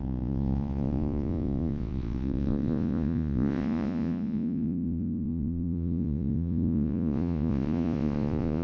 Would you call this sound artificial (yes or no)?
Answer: yes